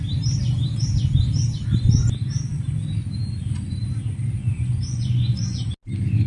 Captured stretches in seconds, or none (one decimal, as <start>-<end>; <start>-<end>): 0.0-4.4; 5.7-6.3

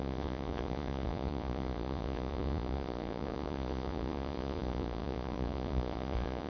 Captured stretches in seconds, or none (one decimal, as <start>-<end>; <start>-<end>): none

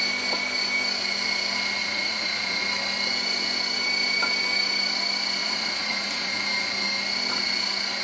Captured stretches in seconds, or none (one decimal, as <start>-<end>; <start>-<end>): 0.0-1.8; 2.6-5.4; 6.3-8.0

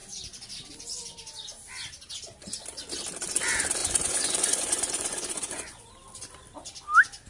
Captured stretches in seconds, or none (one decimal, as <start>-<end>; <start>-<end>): 0.0-3.8; 5.9-7.3

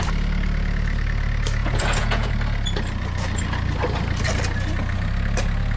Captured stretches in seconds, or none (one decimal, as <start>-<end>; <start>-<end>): 0.0-1.6; 2.3-5.8

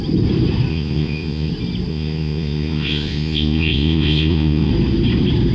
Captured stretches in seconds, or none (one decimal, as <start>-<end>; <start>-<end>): 0.0-0.7; 1.5-1.9; 4.7-5.5